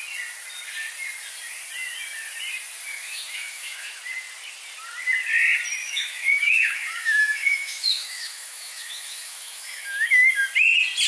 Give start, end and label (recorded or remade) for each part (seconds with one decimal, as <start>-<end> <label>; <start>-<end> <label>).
0.0-2.9 recorded; 2.9-4.0 remade; 4.0-5.8 recorded; 5.8-10.3 remade; 10.3-11.1 recorded